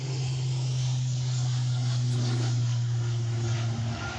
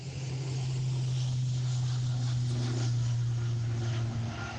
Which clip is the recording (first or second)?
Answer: second